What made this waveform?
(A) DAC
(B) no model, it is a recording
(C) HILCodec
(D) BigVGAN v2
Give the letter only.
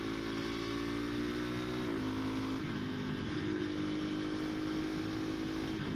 B